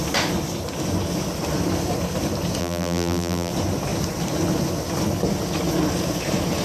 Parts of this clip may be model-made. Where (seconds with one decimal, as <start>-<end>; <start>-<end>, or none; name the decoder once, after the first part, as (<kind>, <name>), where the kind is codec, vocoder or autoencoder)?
2.6-3.5 (vocoder, BigVGAN v2)